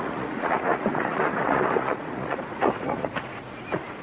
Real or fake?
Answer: fake